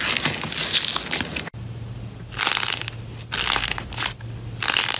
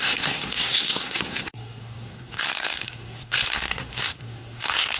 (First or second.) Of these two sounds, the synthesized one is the second